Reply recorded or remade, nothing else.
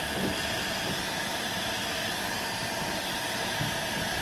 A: recorded